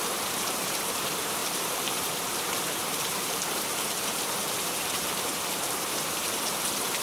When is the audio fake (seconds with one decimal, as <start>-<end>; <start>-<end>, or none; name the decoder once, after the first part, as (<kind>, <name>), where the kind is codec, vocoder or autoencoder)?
0.0-7.0 (vocoder, BigVGAN v2)